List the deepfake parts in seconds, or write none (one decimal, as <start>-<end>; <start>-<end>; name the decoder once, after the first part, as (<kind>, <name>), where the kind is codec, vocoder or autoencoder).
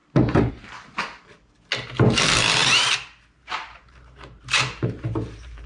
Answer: 2.6-5.7 (vocoder, BigVGAN v2)